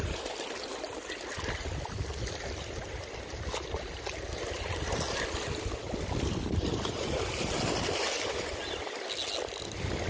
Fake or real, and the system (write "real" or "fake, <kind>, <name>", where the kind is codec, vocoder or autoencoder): real